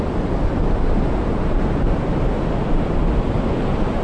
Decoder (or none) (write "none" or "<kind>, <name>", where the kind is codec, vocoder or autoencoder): none